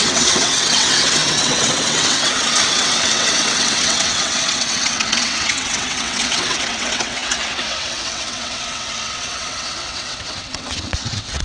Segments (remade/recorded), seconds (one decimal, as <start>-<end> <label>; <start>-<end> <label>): 0.0-11.4 remade